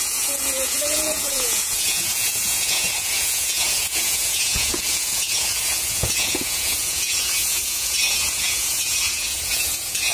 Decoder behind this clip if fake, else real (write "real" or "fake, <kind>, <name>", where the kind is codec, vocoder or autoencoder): fake, vocoder, Vocos